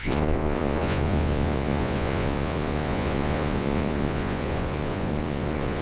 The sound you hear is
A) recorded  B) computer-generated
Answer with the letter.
B